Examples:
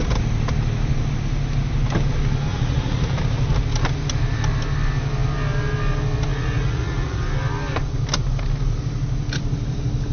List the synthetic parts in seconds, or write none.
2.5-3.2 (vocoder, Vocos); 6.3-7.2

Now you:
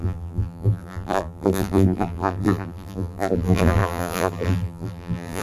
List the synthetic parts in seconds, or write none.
0.0-5.4 (vocoder, BigVGAN v2)

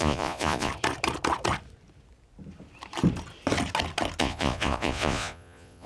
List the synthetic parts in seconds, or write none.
0.0-0.7 (vocoder, Vocos); 4.2-5.9

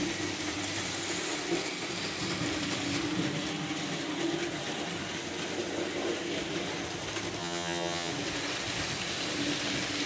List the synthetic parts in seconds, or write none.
7.4-8.1 (vocoder, HiFi-GAN)

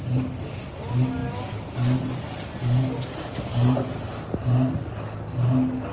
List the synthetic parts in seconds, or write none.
3.5-4.2 (vocoder, BigVGAN v2)

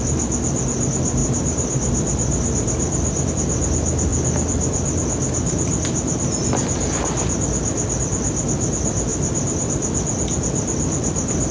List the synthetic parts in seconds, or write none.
1.2-3.3 (vocoder, BigVGAN v2); 9.1-9.7